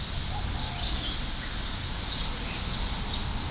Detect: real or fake real